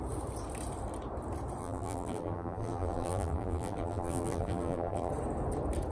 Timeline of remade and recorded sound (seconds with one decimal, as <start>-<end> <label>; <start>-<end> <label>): 0.0-1.6 recorded; 1.6-5.1 remade; 5.1-5.9 recorded